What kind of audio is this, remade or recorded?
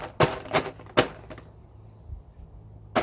recorded